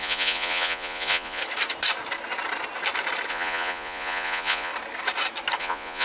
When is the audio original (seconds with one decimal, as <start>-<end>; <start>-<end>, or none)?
1.4-3.3; 4.7-5.6